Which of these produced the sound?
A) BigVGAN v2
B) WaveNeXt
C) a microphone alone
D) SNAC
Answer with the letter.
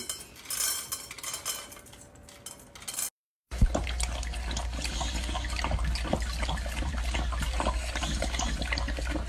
C